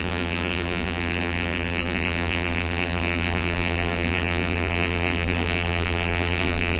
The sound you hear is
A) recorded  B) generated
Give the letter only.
B